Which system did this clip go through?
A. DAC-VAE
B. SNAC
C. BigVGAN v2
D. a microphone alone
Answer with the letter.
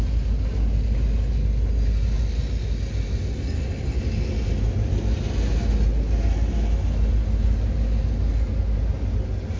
D